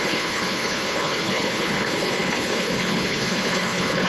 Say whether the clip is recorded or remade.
remade